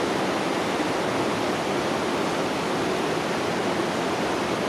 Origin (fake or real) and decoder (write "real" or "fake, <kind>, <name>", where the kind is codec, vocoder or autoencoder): real